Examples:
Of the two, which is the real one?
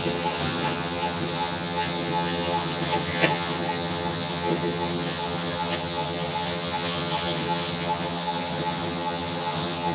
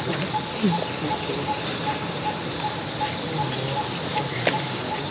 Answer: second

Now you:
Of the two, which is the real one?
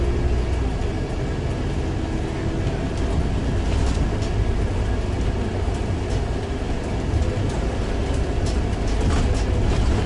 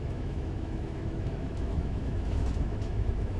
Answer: first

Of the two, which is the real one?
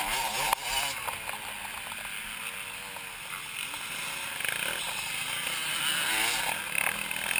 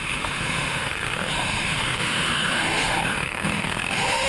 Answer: first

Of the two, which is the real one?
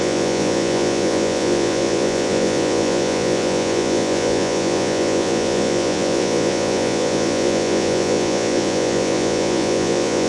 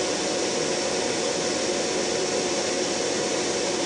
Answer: second